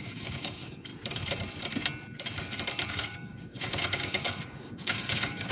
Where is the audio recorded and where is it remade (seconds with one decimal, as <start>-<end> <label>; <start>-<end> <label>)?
0.0-0.9 remade; 0.9-2.9 recorded; 2.9-5.5 remade